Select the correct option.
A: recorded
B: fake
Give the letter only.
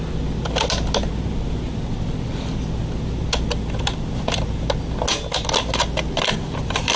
A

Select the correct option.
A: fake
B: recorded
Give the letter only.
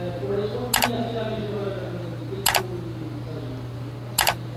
B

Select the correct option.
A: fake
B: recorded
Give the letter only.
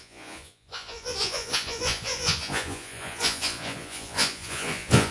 A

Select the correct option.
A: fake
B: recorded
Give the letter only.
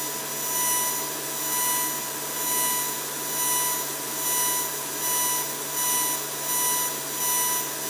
B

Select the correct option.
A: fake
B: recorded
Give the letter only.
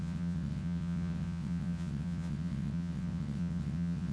A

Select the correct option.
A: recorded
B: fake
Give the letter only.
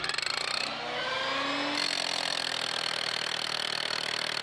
A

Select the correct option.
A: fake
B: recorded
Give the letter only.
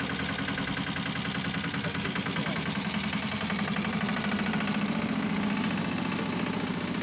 B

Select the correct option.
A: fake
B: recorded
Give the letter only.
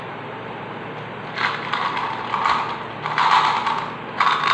B